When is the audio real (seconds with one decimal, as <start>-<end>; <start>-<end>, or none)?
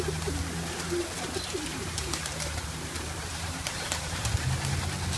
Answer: 0.0-1.7; 4.2-5.2